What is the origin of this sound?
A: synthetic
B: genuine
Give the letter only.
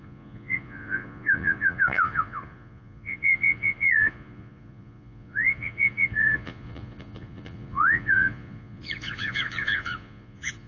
A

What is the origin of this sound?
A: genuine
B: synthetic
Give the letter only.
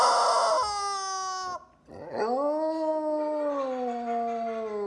A